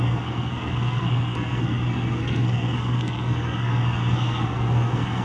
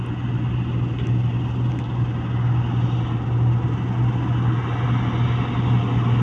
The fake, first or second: first